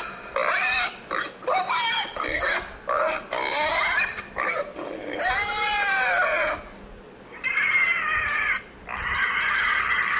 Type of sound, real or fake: real